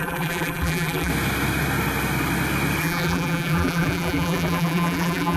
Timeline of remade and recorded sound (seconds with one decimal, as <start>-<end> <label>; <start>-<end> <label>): 0.0-1.1 remade; 1.1-2.8 recorded; 2.8-5.4 remade